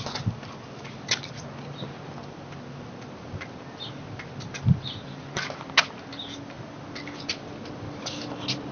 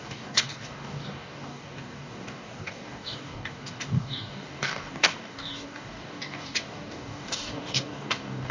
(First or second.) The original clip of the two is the first